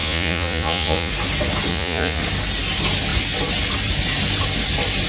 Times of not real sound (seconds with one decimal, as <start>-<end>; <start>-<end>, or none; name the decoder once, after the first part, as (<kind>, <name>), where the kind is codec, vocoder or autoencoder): 0.0-1.1 (vocoder, Vocos); 1.7-2.2